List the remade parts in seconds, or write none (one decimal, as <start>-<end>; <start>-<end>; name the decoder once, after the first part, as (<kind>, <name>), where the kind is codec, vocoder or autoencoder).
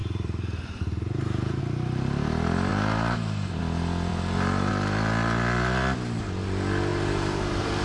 0.0-1.6 (vocoder, BigVGAN v2); 2.7-3.6; 4.1-4.7; 6.9-7.8